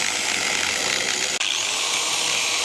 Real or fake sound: fake